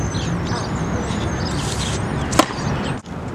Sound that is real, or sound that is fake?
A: real